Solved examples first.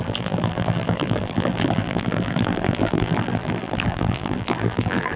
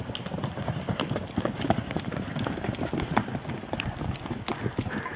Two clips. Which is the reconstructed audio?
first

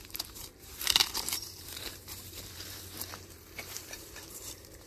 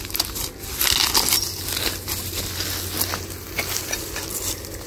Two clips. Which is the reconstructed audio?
first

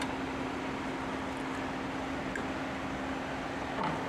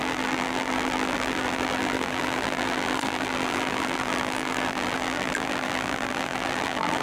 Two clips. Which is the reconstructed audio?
second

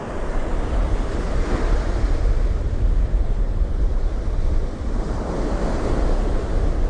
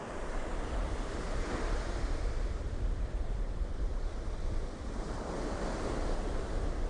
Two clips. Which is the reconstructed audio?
second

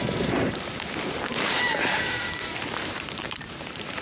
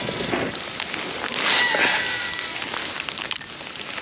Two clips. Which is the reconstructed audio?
first